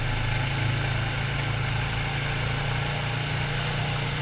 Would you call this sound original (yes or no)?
yes